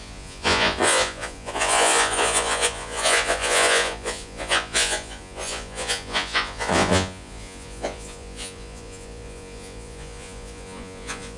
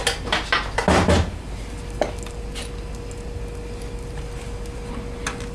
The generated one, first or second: first